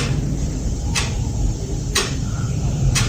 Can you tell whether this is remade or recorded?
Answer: remade